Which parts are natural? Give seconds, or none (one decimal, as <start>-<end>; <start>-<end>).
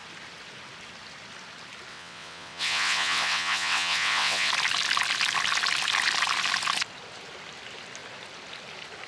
0.0-1.9; 4.5-9.1